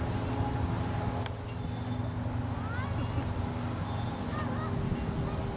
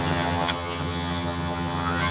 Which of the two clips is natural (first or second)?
first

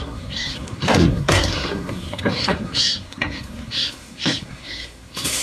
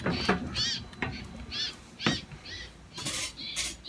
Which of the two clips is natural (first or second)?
second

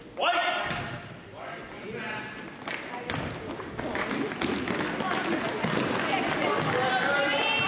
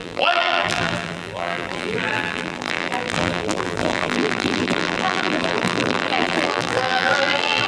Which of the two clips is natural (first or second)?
first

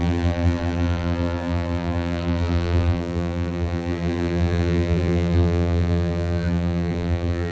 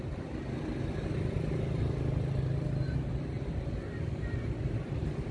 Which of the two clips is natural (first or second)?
second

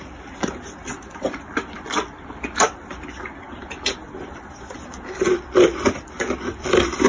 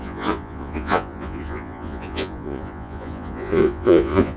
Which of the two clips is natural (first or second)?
first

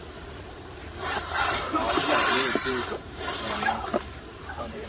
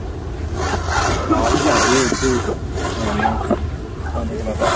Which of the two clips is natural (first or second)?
second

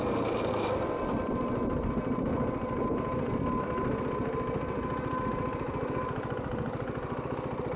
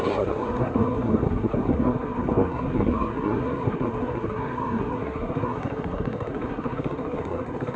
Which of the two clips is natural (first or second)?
first